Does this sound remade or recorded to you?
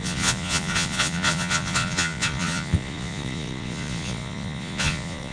remade